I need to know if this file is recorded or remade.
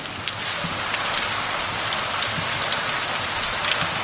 recorded